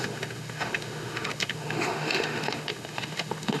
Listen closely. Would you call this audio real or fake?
fake